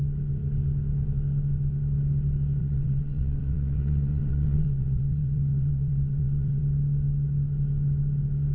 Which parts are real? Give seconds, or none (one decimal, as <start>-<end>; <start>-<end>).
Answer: 0.0-2.6; 6.6-8.5